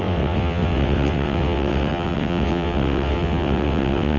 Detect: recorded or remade remade